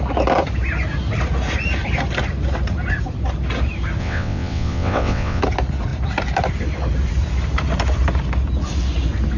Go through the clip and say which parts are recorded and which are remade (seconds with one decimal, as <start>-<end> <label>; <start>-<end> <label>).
0.0-4.0 recorded; 4.0-5.4 remade; 5.4-9.4 recorded

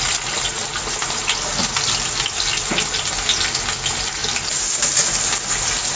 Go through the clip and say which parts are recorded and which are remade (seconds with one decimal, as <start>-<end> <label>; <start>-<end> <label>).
0.0-6.0 recorded

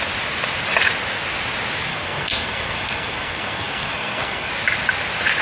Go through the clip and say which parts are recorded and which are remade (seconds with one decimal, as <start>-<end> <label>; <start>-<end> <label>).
0.0-1.9 recorded; 1.9-4.5 remade; 4.5-5.4 recorded

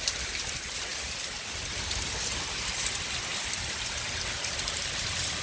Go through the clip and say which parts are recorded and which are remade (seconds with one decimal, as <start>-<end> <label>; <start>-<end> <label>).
0.0-5.4 recorded

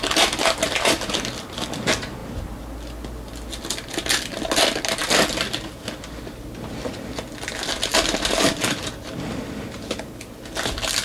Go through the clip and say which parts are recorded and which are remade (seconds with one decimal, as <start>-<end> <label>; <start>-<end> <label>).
0.0-11.0 recorded

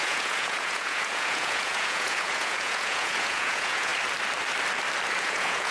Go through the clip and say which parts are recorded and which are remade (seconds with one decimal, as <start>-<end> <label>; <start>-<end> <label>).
0.0-3.9 remade; 3.9-5.2 recorded; 5.2-5.7 remade

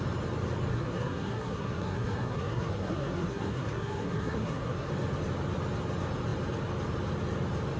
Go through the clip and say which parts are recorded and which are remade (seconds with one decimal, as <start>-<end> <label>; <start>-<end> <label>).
0.0-0.7 recorded; 0.7-4.9 remade; 4.9-7.8 recorded

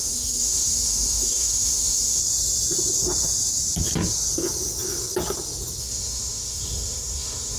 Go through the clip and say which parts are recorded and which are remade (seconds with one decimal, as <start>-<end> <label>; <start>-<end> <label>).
0.0-2.2 remade; 2.2-5.8 recorded; 5.8-7.6 remade